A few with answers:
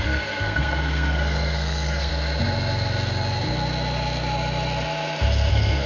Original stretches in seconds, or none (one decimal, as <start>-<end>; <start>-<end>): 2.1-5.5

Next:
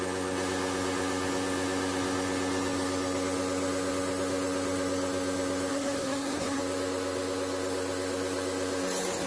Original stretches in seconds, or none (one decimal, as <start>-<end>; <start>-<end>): 0.0-5.7; 6.6-9.3

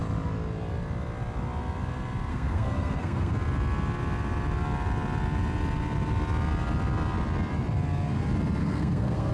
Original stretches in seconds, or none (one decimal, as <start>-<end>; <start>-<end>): 0.0-2.3; 3.3-8.6

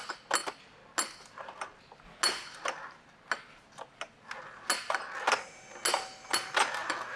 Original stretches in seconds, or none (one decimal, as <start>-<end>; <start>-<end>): 0.0-7.2

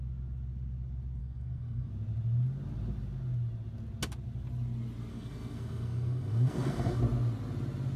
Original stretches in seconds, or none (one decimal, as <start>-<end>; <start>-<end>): 0.0-1.2; 1.9-5.1; 7.0-8.0

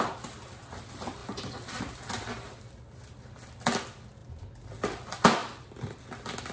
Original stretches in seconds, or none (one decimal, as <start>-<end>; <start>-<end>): 0.0-6.5

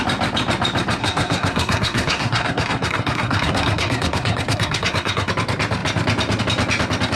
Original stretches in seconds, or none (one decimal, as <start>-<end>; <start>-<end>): 0.0-1.0; 5.3-7.2

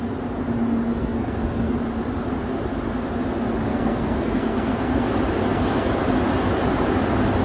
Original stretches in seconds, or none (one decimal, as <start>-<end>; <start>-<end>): 0.0-0.9; 1.7-3.7; 5.1-5.5; 6.0-7.4